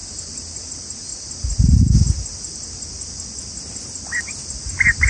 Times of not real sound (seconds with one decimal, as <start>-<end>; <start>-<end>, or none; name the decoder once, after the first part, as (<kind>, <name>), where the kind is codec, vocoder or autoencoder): none